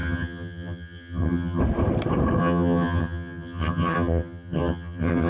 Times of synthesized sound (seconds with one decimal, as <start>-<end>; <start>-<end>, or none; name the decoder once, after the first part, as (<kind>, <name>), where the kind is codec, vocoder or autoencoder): 0.0-1.6 (vocoder, HiFi-GAN); 2.4-5.3